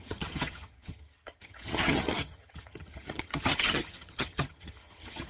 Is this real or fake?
fake